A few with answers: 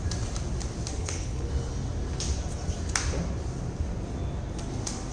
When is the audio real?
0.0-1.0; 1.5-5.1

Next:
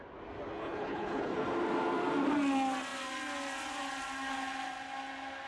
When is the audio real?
0.0-0.6; 1.3-5.5

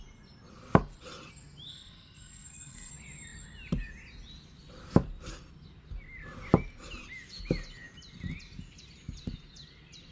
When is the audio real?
0.0-1.7; 2.9-10.1